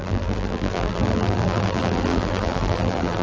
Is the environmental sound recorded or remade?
remade